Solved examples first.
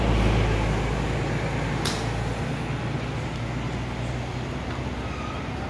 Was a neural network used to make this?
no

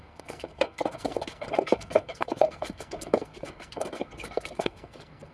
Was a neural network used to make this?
yes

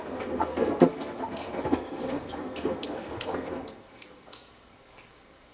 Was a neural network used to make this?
yes